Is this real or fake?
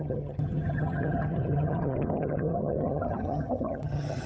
fake